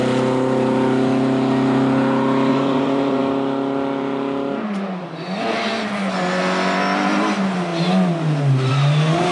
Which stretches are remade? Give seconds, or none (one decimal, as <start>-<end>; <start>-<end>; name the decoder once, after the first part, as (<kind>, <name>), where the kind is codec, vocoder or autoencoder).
2.5-3.2 (vocoder, Vocos)